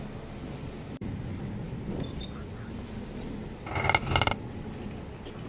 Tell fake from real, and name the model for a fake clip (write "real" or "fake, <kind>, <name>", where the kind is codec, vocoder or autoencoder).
real